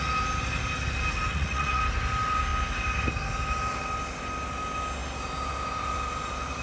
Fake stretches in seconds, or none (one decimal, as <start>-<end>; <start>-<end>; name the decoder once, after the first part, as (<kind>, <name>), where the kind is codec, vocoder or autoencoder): 1.3-1.8 (vocoder, Vocos)